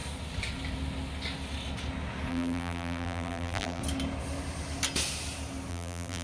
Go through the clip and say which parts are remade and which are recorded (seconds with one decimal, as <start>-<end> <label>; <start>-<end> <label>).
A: 0.0-2.3 recorded; 2.3-3.8 remade; 3.8-5.7 recorded; 5.7-6.2 remade